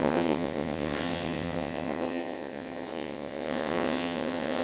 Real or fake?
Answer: fake